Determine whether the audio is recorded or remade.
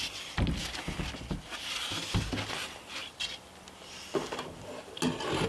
recorded